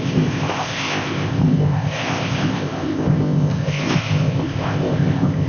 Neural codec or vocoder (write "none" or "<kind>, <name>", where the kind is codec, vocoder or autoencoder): codec, ZipCodec